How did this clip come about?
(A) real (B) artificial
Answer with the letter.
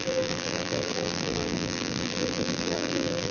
B